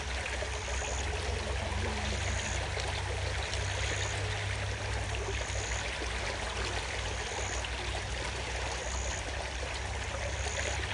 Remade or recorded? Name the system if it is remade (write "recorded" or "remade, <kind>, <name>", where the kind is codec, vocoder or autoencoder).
recorded